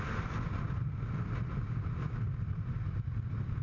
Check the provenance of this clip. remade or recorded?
recorded